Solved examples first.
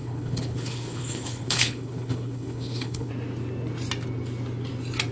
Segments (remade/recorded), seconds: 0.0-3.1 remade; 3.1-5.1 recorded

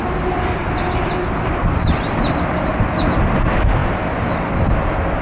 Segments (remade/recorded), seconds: 0.0-5.2 recorded

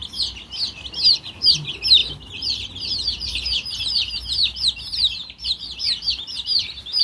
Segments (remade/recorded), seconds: 0.0-1.1 recorded; 1.1-7.0 remade

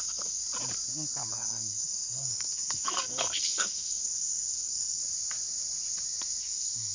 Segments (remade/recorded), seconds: 0.0-0.4 remade; 0.4-1.3 recorded; 1.3-5.0 remade; 5.0-6.4 recorded; 6.4-6.9 remade

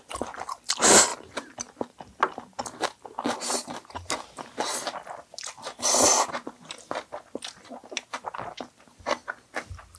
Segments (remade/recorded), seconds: 0.0-10.0 recorded

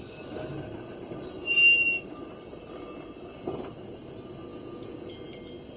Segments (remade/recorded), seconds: 0.0-4.5 recorded; 4.5-5.1 remade; 5.1-5.8 recorded